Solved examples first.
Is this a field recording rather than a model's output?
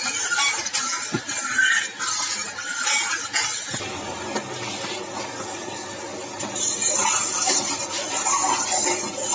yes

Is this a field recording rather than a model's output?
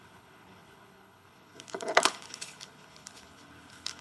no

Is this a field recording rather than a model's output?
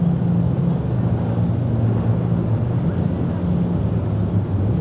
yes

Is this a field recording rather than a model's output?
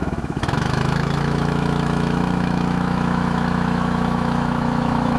no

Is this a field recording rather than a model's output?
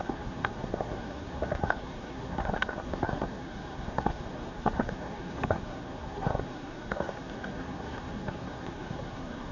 no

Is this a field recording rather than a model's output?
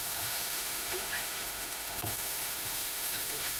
no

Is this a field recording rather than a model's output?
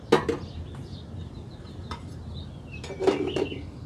yes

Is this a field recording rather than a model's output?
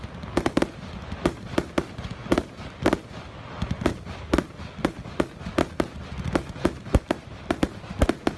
yes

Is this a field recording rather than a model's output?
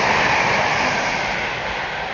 yes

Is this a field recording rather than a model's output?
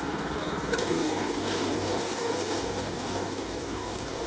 no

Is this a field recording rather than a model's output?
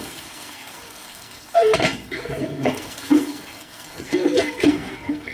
no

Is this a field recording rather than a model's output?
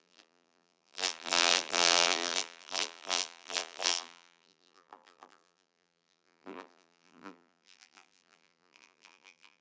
no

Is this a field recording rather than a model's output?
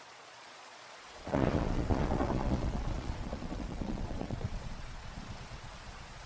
no